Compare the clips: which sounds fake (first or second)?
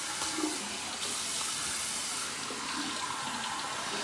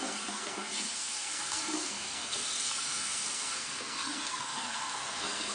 second